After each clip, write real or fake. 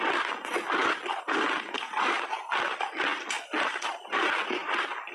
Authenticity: real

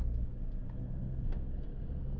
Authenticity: fake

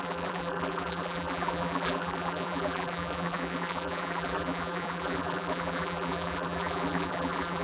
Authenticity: fake